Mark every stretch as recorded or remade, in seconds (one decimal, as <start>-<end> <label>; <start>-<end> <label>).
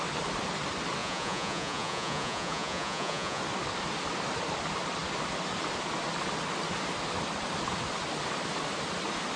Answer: 0.0-1.0 recorded; 1.0-3.4 remade; 3.4-9.4 recorded